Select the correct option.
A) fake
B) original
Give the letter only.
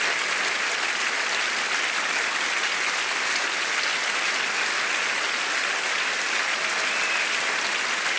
B